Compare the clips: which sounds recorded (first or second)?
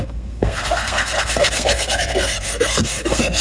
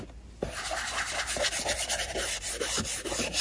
second